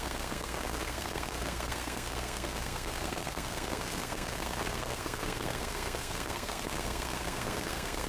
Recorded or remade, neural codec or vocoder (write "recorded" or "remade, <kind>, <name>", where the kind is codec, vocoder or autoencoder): remade, codec, SNAC